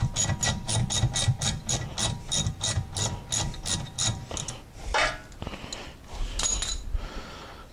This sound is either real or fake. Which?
real